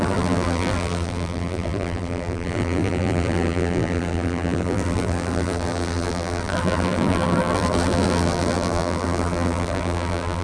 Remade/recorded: remade